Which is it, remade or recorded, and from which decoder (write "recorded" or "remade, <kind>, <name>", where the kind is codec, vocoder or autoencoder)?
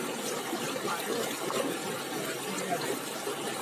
recorded